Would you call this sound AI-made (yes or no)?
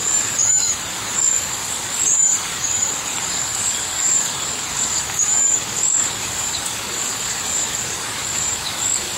yes